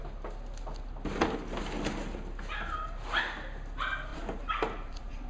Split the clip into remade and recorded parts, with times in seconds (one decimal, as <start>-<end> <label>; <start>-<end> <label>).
0.0-4.1 recorded; 4.1-5.3 remade